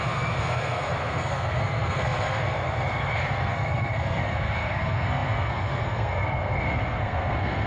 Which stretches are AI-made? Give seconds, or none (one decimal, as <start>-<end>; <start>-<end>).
0.0-7.7